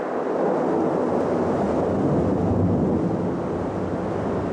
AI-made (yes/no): no